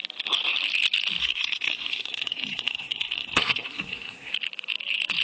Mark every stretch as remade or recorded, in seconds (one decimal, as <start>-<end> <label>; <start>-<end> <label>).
0.0-1.2 recorded; 1.2-4.3 remade; 4.3-5.2 recorded